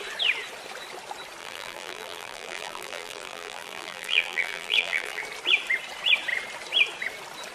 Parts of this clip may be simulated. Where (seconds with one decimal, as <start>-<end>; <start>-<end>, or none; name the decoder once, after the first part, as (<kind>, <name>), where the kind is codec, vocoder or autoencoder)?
1.4-5.2 (vocoder, BigVGAN v2)